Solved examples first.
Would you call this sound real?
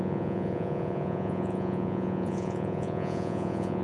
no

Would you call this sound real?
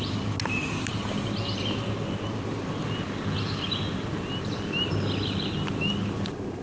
yes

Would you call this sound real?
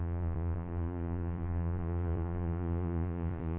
no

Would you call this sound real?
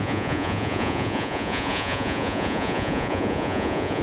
no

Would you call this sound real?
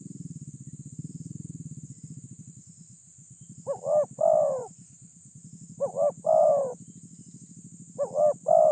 yes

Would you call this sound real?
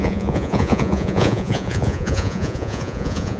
no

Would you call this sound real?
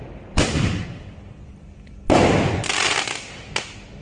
yes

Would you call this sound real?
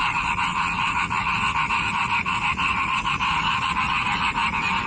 no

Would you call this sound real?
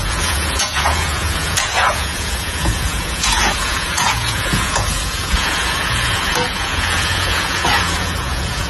no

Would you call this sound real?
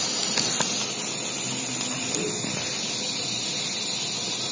yes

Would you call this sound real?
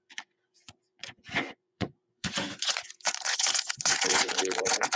no